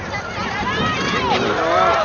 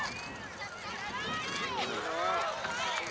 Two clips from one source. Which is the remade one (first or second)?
first